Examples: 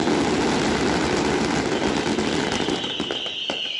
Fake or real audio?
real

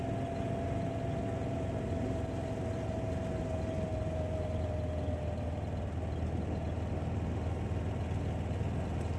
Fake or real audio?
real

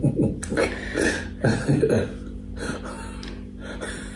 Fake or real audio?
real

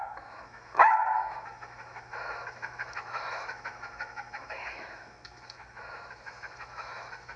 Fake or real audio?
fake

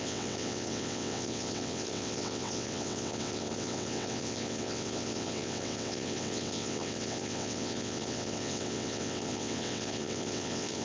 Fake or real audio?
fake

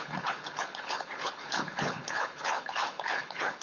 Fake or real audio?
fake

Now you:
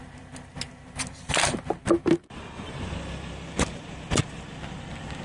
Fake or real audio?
real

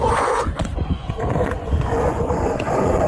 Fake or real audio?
fake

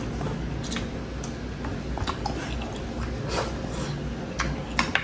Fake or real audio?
real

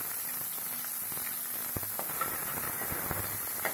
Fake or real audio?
real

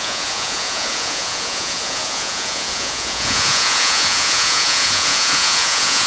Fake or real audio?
fake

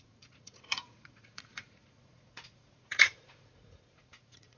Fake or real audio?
fake